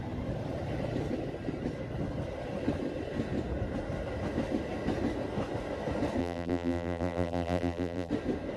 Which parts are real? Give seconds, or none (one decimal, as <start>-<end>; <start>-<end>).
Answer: 0.0-6.2; 8.1-8.6